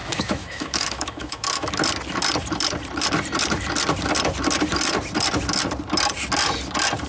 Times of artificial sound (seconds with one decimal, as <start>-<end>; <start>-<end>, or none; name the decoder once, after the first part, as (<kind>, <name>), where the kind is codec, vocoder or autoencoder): 0.0-1.7 (autoencoder, DAC-VAE)